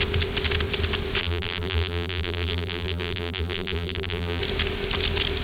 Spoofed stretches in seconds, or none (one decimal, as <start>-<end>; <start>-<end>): 1.2-4.4